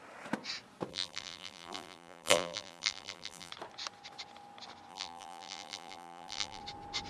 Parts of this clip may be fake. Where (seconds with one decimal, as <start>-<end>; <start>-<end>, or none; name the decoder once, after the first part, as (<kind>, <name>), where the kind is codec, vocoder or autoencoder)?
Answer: 0.9-3.5 (vocoder, BigVGAN v2); 4.9-6.6